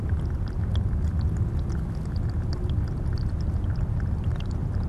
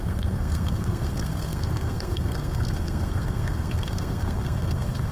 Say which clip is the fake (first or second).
second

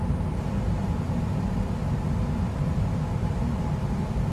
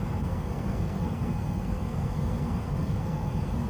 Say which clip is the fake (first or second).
second